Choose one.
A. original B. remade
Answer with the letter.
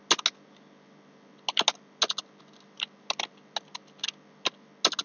A